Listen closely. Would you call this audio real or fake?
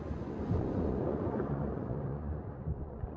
fake